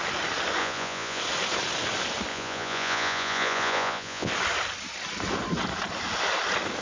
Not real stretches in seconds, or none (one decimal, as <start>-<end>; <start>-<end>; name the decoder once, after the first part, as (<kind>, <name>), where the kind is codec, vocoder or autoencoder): 0.6-1.2 (vocoder, Vocos); 2.3-4.3